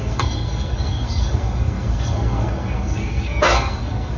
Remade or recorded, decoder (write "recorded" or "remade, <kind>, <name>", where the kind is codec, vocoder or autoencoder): remade, codec, SNAC